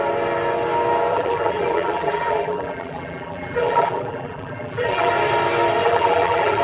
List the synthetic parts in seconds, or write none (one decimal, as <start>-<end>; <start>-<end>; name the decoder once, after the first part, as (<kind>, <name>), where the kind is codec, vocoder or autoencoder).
1.1-5.1 (vocoder, BigVGAN v2); 5.8-6.6